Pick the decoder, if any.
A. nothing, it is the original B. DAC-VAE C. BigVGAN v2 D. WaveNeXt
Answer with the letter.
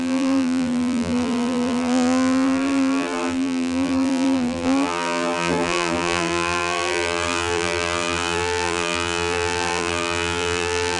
C